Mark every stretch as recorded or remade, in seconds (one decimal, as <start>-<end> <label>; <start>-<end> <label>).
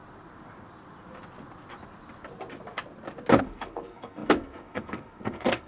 0.0-3.4 recorded; 3.4-5.7 remade